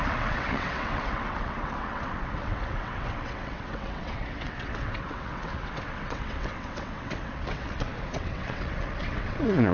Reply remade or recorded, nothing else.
remade